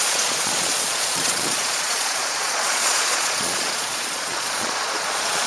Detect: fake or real fake